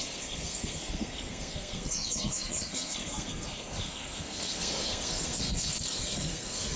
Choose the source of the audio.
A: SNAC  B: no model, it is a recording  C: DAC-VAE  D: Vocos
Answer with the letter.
A